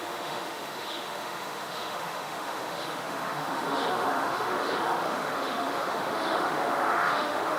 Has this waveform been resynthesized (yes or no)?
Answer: yes